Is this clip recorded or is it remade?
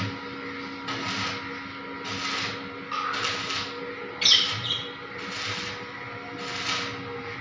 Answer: recorded